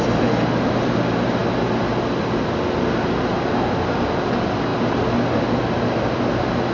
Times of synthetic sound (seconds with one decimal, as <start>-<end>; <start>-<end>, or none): none